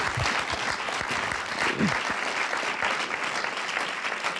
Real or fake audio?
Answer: real